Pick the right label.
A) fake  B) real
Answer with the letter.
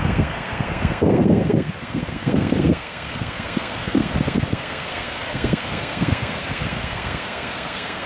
A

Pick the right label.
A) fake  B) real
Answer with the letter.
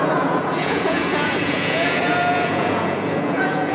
A